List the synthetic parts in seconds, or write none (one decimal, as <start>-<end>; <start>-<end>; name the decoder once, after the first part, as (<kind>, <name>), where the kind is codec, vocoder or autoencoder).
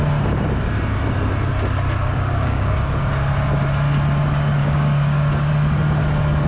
2.0-3.1 (codec, DAC); 4.6-5.5